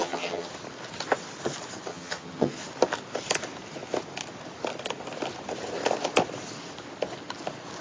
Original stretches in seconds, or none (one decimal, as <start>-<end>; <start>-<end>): 0.5-1.9; 2.5-7.8